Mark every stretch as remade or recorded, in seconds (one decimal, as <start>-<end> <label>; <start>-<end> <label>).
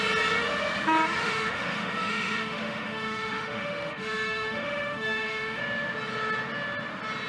0.0-1.2 recorded; 1.2-5.6 remade; 5.6-7.3 recorded